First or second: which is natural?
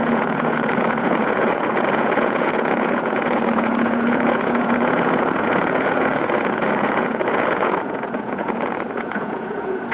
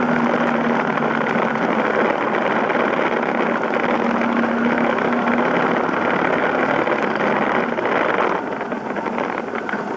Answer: second